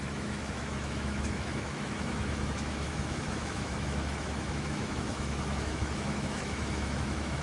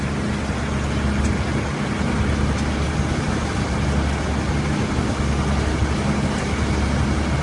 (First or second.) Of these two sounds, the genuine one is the second